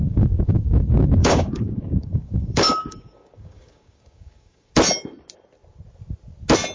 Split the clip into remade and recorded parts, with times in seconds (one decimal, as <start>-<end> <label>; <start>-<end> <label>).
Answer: 0.0-0.7 remade; 0.7-1.2 recorded; 1.2-4.7 remade; 4.7-6.7 recorded